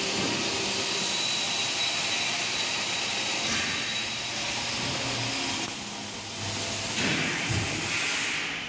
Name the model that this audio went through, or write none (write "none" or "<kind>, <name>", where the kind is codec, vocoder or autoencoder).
none